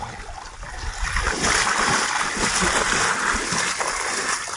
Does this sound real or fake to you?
real